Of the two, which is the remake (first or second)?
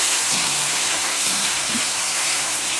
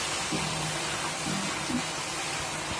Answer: first